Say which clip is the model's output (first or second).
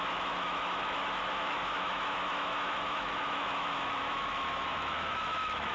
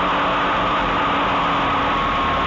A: first